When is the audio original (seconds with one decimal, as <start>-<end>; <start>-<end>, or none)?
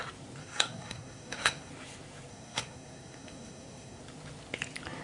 0.0-0.4; 1.7-2.3; 4.0-5.0